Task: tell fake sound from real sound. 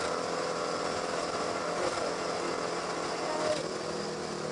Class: real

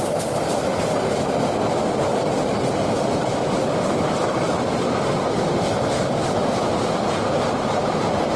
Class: fake